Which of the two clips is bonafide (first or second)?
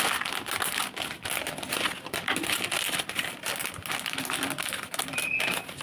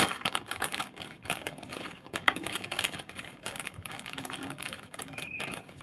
first